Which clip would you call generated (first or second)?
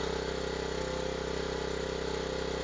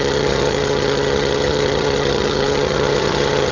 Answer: second